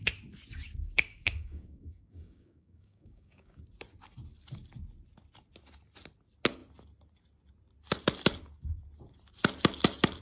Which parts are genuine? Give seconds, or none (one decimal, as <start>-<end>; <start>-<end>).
0.0-1.1; 3.6-10.2